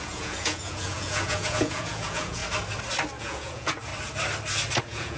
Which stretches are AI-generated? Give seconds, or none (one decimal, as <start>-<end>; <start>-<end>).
0.0-2.4; 3.2-3.9; 4.8-5.2